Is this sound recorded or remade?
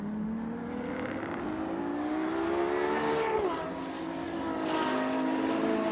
recorded